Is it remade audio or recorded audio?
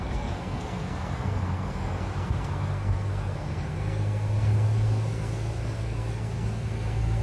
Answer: remade